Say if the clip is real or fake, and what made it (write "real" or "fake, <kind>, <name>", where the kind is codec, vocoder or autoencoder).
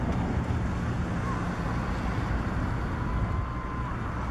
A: real